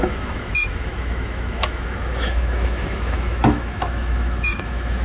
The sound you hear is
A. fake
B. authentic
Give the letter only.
A